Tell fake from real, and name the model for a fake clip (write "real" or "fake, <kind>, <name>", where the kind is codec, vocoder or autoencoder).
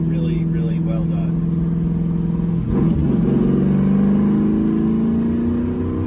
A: real